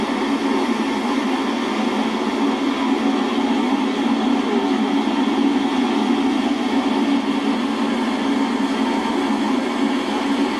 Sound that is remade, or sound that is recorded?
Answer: recorded